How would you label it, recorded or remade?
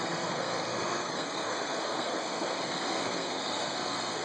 remade